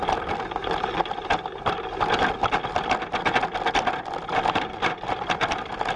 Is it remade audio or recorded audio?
recorded